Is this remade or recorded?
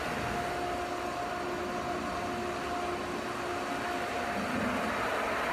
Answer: recorded